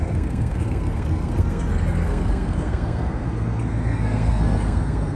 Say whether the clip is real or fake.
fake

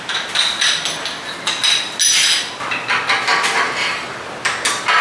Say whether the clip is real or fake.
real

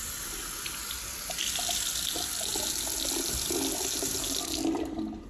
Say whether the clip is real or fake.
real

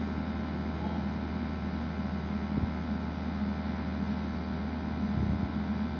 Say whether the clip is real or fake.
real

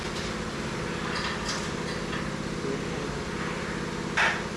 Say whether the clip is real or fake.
real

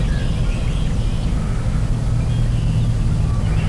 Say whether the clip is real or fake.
real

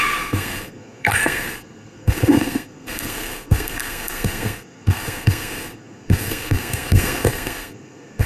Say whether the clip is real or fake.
fake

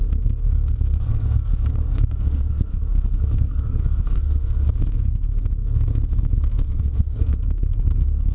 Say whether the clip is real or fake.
fake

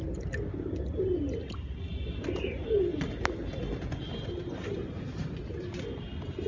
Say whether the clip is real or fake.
real